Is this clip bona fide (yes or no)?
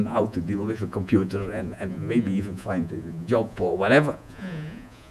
no